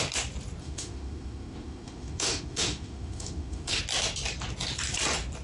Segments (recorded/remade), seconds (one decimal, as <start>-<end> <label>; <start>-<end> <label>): 0.0-0.6 recorded; 0.6-3.8 remade; 3.8-5.4 recorded